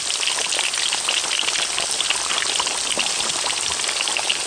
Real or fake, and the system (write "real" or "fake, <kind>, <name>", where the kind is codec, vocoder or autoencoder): real